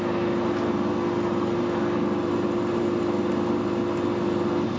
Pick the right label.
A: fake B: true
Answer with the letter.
B